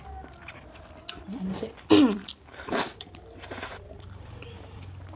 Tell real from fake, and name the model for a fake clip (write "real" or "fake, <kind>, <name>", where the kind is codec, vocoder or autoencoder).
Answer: real